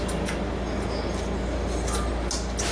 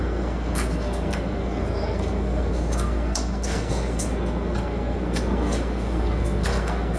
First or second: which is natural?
first